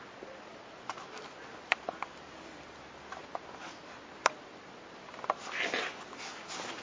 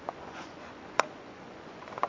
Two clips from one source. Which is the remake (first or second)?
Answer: second